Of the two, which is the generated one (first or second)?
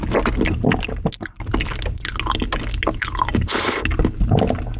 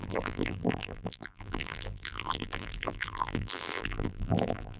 second